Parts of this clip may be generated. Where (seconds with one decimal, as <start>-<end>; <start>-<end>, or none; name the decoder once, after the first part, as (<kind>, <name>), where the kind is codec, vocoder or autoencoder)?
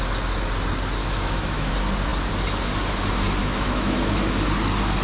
1.0-1.7 (autoencoder, DAC-VAE); 3.4-4.2